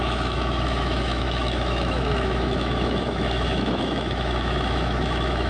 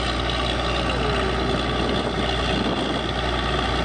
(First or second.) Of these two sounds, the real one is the second